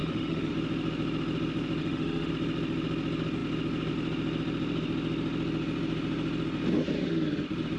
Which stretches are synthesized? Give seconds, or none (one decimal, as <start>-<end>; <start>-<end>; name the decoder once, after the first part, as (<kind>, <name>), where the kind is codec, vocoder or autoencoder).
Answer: 0.0-0.5 (autoencoder, DAC-VAE); 1.8-2.3